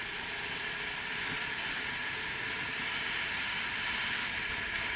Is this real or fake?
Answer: real